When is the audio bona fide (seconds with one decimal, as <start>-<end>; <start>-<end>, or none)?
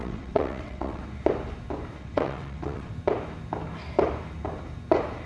1.0-2.0; 2.9-5.3